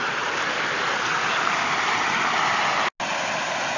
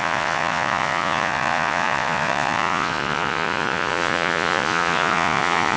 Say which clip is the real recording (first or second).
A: first